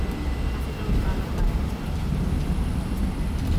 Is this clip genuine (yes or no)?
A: yes